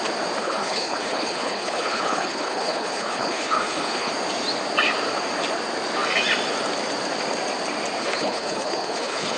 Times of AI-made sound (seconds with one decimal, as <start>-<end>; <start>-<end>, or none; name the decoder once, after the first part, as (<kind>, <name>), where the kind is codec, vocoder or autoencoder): 0.4-4.1 (codec, HILCodec); 8.0-9.4